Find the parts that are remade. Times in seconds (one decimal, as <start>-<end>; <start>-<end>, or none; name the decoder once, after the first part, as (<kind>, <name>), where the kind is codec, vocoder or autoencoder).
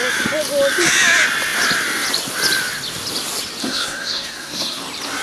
3.6-4.8 (codec, SNAC)